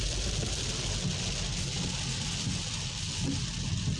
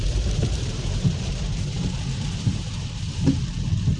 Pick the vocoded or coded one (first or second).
second